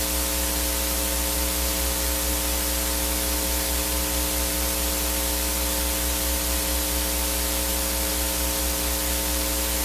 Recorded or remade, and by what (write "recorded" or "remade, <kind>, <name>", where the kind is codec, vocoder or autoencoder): recorded